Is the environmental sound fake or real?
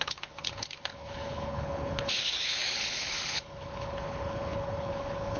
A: fake